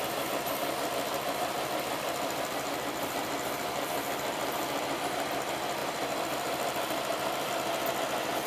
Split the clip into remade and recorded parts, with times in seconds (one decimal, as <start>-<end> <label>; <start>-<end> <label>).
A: 0.0-0.6 recorded; 0.6-4.8 remade; 4.8-5.8 recorded; 5.8-7.5 remade; 7.5-8.5 recorded